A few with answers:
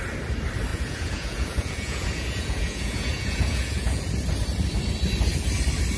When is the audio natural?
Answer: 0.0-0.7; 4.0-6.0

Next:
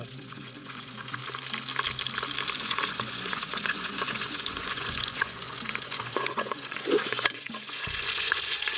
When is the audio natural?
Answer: 1.2-2.6